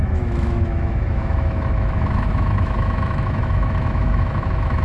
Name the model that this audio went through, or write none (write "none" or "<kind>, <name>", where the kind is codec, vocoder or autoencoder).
autoencoder, DAC-VAE